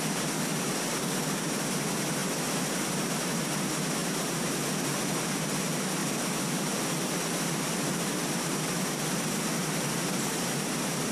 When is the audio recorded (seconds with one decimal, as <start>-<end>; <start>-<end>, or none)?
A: 0.0-6.0; 7.6-11.1